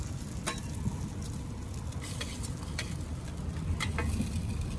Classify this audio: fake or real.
real